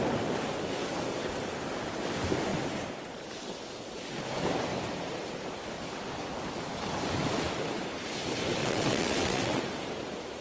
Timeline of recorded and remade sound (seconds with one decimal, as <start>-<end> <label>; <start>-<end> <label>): 0.0-8.6 recorded; 8.6-9.6 remade; 9.6-10.4 recorded